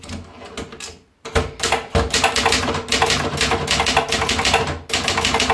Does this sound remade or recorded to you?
recorded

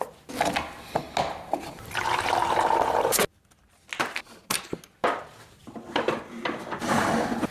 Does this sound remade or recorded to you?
recorded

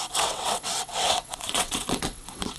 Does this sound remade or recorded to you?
remade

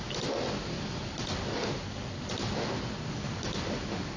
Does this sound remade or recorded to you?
recorded